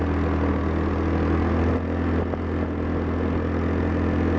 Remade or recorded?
recorded